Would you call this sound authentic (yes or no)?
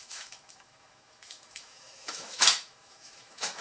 no